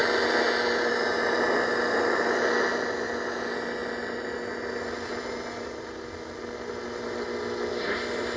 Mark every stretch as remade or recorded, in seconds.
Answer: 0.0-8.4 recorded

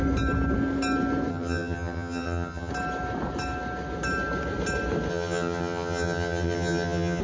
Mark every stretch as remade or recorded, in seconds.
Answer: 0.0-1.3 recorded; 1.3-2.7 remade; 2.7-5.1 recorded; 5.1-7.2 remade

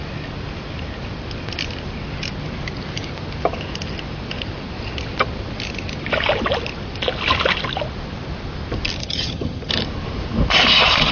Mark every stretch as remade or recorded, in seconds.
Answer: 0.0-9.0 recorded; 9.0-9.7 remade; 9.7-11.1 recorded

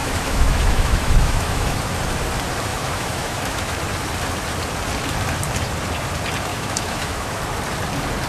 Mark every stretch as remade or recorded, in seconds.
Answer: 0.0-1.8 remade; 1.8-2.7 recorded; 2.7-3.8 remade; 3.8-6.5 recorded; 6.5-7.4 remade; 7.4-8.3 recorded